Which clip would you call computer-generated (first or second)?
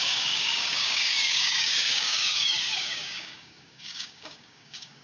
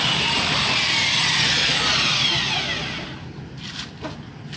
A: first